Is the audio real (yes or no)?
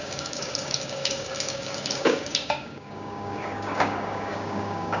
no